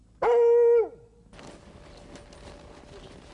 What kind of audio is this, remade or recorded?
recorded